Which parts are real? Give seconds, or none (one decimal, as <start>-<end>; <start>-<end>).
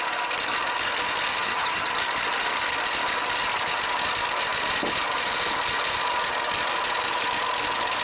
0.0-1.3; 1.9-8.0